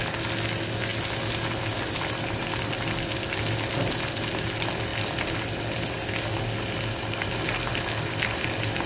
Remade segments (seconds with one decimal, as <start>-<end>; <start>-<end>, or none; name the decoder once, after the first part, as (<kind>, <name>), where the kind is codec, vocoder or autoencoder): none